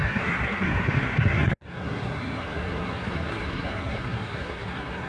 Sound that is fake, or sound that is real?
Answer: fake